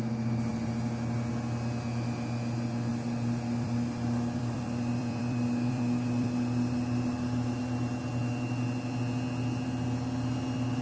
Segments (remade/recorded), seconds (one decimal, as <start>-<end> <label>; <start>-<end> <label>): 0.0-2.9 recorded; 2.9-7.6 remade; 7.6-10.8 recorded